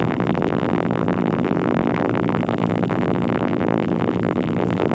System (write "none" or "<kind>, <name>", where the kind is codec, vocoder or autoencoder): vocoder, BigVGAN v2